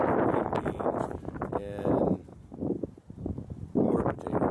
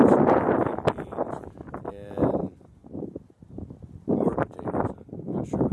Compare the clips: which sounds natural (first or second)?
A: first